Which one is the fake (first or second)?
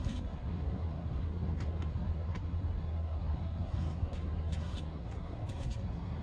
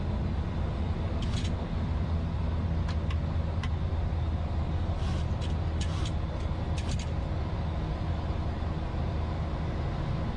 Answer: first